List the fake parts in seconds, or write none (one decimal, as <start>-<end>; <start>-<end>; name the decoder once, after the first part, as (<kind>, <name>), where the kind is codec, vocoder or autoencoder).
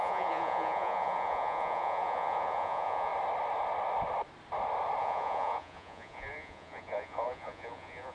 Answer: 0.0-3.1 (vocoder, Vocos); 5.0-8.1